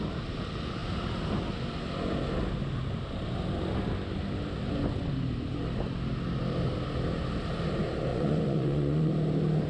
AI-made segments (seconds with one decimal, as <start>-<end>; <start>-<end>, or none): 8.1-9.1